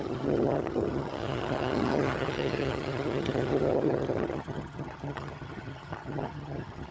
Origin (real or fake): fake